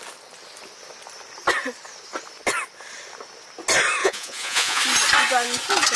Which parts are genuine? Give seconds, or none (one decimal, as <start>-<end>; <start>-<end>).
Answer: 0.0-4.0; 4.8-6.0